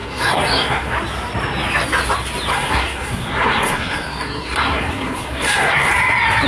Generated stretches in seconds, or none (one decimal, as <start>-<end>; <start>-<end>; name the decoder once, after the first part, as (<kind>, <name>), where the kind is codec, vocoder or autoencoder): 0.0-1.0 (codec, SNAC); 2.5-5.9